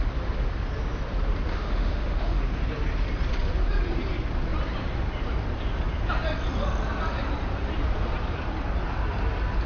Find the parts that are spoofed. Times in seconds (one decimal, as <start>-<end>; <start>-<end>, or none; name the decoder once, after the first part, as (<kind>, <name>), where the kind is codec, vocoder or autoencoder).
1.5-2.4 (autoencoder, DAC-VAE)